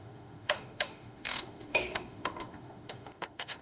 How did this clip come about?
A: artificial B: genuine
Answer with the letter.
A